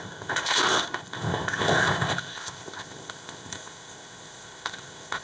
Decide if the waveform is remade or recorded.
remade